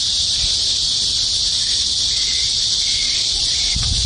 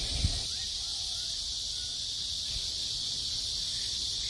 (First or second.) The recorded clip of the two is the second